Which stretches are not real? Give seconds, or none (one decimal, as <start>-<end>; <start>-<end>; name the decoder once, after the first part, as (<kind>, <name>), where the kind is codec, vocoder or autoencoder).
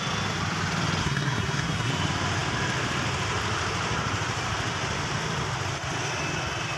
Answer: 1.0-1.9 (codec, SNAC)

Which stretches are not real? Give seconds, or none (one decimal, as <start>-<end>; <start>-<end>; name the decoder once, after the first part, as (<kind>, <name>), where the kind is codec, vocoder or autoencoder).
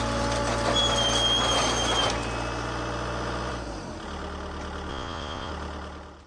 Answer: 4.9-5.5 (vocoder, Vocos)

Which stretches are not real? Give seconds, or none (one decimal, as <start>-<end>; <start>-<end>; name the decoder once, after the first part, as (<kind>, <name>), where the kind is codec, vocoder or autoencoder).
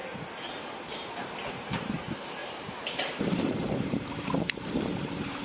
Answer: 1.5-2.4 (vocoder, BigVGAN v2); 3.3-5.4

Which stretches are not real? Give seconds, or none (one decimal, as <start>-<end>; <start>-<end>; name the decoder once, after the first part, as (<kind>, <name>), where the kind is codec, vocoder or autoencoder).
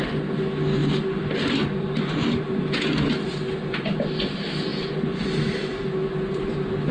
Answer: none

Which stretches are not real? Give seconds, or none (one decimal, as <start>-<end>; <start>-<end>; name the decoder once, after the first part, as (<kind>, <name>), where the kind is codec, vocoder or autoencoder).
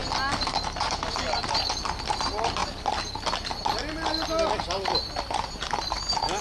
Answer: none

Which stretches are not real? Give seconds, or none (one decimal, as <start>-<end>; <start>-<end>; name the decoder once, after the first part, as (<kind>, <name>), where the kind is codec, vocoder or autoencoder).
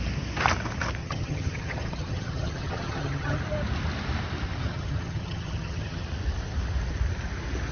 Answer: 1.0-3.4 (vocoder, HiFi-GAN); 4.6-6.0